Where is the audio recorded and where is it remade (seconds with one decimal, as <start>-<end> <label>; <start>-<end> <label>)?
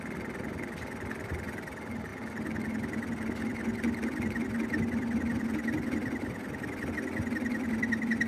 0.0-8.3 recorded